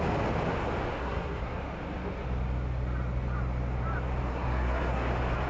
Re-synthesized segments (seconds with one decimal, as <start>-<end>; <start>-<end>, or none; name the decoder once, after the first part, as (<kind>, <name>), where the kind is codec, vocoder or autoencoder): 1.0-1.6 (codec, SNAC); 4.3-5.1